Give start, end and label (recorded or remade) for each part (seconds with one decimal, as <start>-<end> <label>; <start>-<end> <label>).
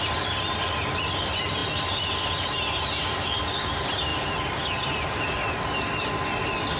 0.0-6.8 recorded